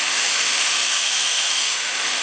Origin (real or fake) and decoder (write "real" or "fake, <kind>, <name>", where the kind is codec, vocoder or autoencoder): fake, autoencoder, DAC-VAE